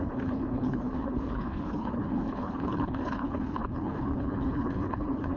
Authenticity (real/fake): fake